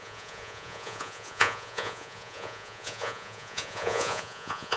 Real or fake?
fake